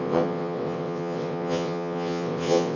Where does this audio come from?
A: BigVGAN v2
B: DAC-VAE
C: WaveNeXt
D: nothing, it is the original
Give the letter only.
C